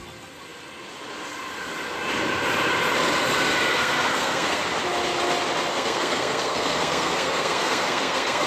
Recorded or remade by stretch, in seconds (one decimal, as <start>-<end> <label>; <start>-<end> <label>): 0.0-3.7 recorded; 3.7-4.6 remade; 4.6-5.7 recorded; 5.7-8.5 remade